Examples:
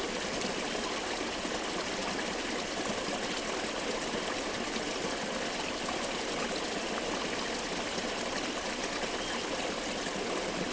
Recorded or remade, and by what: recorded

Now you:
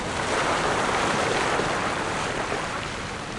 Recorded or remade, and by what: recorded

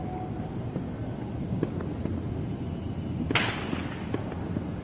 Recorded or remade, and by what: recorded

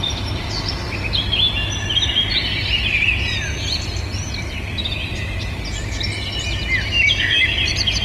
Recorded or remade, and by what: recorded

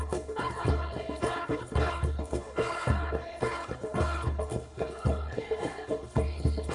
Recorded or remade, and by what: remade, codec, HILCodec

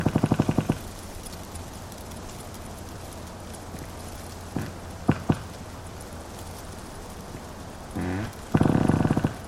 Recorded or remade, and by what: remade, vocoder, BigVGAN v2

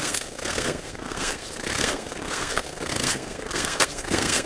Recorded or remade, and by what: remade, codec, SNAC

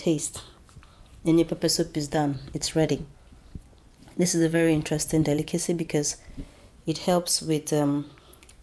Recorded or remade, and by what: remade, vocoder, Vocos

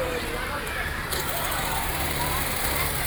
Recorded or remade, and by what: remade, vocoder, BigVGAN v2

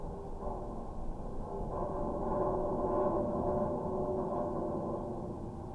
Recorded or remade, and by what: recorded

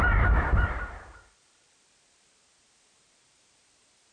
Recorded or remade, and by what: remade, vocoder, BigVGAN v2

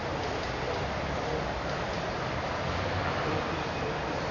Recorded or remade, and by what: recorded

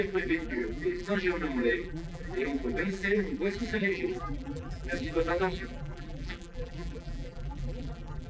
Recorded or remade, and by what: remade, vocoder, BigVGAN v2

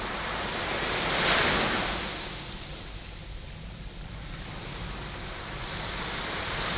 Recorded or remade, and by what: recorded